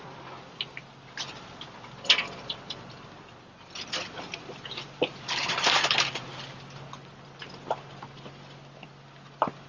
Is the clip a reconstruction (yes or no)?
no